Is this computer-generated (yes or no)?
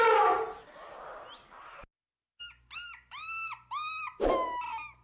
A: no